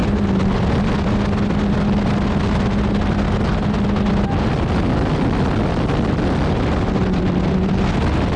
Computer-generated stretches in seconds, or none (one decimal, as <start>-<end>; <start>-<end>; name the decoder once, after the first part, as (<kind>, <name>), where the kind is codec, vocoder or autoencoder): none